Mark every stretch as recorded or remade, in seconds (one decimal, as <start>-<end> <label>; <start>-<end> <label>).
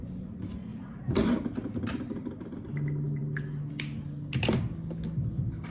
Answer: 0.0-0.7 recorded; 0.7-2.5 remade; 2.5-5.7 recorded